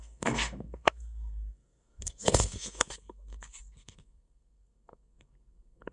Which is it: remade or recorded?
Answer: remade